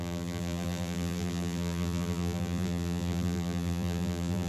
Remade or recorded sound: remade